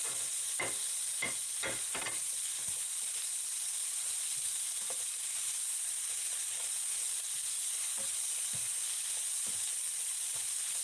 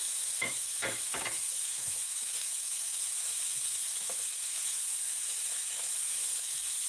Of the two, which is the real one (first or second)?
first